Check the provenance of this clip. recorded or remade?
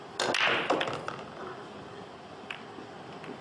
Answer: recorded